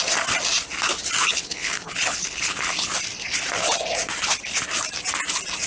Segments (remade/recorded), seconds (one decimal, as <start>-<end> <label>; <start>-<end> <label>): 0.0-1.2 recorded; 1.2-2.9 remade; 2.9-5.7 recorded